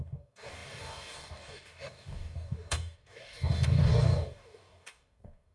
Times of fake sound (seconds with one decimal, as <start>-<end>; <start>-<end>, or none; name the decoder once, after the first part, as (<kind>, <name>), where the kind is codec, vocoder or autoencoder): 0.0-5.5 (codec, DAC)